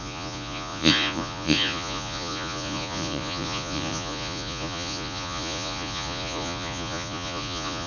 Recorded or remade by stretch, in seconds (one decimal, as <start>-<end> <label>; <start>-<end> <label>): 0.0-7.9 remade